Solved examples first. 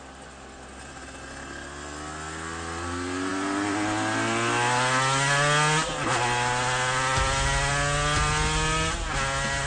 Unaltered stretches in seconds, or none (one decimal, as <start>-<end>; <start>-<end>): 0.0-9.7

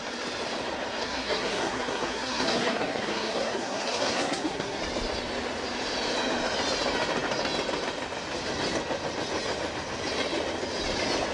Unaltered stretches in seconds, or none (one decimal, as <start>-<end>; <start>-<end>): 0.0-1.0; 4.8-11.3

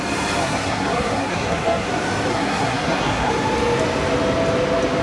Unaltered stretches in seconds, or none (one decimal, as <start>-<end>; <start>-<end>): 0.0-0.4; 1.9-2.3; 3.3-5.0